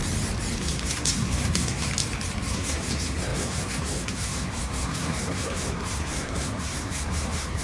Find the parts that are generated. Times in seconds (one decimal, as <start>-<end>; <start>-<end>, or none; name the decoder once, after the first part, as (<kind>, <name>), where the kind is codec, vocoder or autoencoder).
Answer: 0.5-1.9 (codec, SNAC); 2.5-7.6